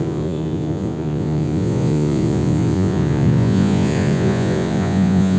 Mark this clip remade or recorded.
remade